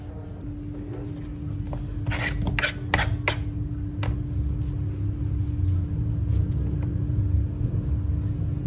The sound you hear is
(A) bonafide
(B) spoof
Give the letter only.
A